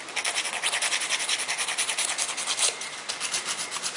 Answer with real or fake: real